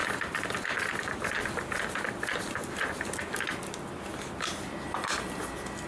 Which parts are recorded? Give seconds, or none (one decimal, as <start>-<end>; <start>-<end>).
1.3-5.9